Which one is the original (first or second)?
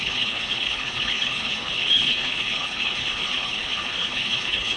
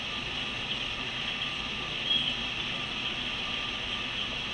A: second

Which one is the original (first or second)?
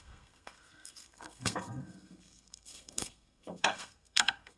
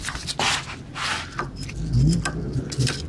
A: second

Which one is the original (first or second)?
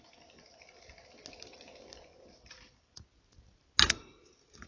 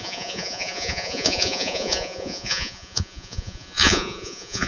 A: first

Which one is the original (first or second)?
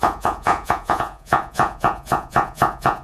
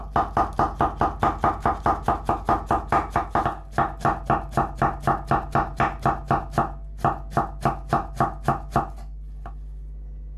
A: second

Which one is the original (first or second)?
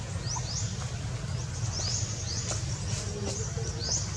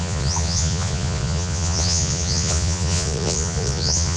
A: first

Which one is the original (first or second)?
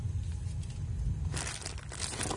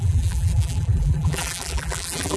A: first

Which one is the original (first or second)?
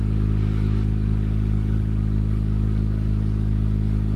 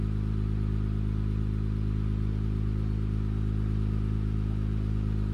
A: second